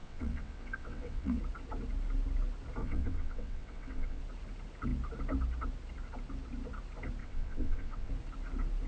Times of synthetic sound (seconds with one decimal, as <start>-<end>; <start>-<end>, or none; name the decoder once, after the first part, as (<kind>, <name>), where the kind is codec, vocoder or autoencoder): 0.0-1.4 (vocoder, WaveNeXt); 2.8-4.2; 7.2-8.1